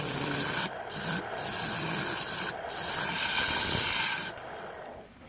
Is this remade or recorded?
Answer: recorded